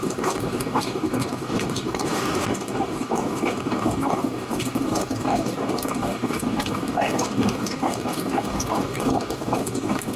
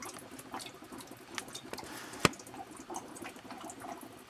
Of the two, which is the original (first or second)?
second